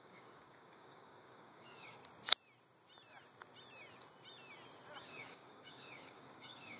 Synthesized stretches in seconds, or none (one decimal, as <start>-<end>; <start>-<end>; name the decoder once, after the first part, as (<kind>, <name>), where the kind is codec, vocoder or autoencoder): 0.0-2.0 (codec, DAC); 5.0-6.8